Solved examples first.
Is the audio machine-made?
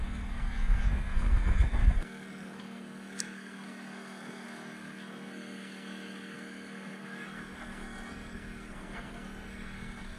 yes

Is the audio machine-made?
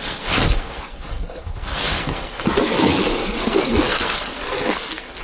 yes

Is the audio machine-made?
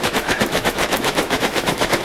yes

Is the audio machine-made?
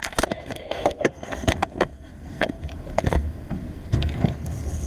yes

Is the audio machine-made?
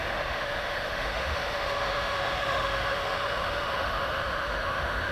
yes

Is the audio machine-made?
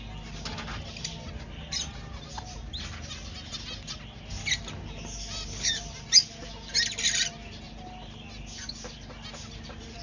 no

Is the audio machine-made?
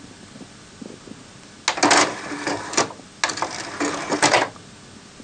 no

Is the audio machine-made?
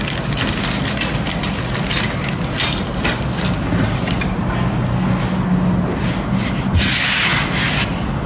no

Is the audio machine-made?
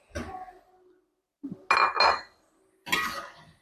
no